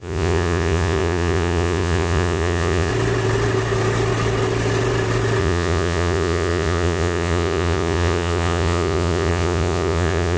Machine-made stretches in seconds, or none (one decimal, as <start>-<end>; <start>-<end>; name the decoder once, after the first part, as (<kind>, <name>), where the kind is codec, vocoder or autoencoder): 0.0-2.9 (vocoder, Vocos); 5.4-10.4